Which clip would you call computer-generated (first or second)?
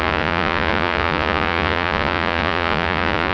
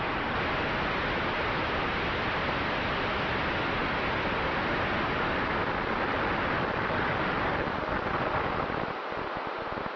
first